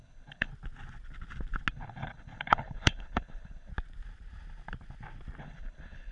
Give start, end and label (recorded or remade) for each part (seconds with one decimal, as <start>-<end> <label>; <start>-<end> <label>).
0.0-0.5 remade; 0.5-1.7 recorded; 1.7-3.7 remade; 3.7-5.4 recorded; 5.4-6.1 remade